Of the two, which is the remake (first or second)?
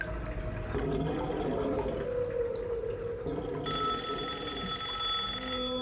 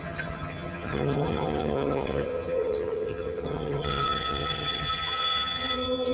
second